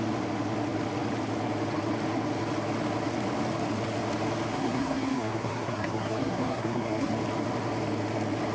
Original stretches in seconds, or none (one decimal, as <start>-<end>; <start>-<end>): 0.0-4.5; 7.1-8.5